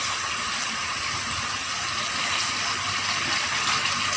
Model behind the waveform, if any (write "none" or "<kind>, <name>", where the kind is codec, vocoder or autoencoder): none